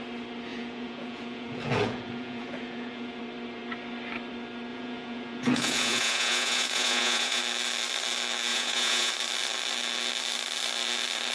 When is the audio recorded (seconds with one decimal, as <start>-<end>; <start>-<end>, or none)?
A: 0.0-0.5; 3.2-4.7; 7.4-8.5; 9.1-11.3